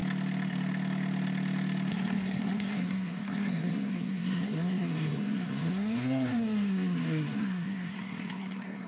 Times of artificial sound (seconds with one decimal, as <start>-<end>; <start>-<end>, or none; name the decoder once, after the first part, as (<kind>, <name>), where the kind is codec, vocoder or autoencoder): 1.9-8.9 (codec, SNAC)